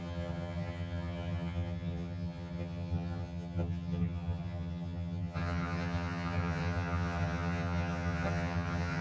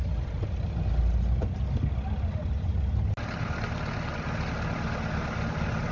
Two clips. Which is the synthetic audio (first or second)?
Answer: first